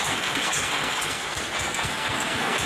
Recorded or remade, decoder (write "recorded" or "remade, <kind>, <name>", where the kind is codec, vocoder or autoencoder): remade, codec, SNAC